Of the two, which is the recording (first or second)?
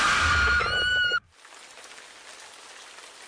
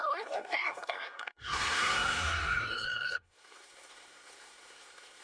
first